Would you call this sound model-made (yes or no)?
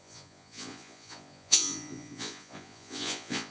yes